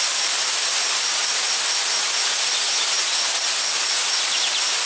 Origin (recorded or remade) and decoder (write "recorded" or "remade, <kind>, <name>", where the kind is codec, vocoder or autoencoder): recorded